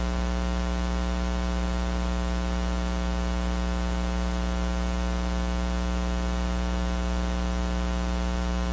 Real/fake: real